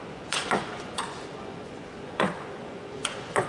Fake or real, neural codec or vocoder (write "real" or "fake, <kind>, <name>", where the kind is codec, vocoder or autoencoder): fake, vocoder, Vocos